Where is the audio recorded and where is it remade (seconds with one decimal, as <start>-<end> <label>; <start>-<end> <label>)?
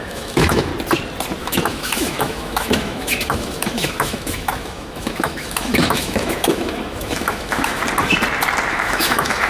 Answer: 0.0-0.7 remade; 0.7-1.4 recorded; 1.4-7.8 remade; 7.8-8.7 recorded; 8.7-9.5 remade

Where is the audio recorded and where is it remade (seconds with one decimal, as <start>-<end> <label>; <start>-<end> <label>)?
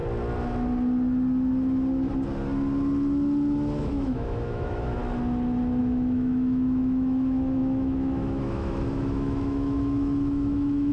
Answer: 0.0-3.8 recorded; 3.8-5.0 remade; 5.0-5.8 recorded; 5.8-10.9 remade